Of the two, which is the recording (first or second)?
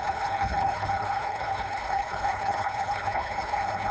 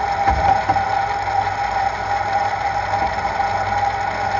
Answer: second